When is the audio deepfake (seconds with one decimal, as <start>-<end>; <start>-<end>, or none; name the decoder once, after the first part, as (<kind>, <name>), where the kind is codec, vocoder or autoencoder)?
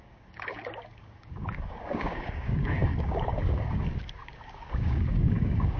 0.0-5.8 (codec, DAC)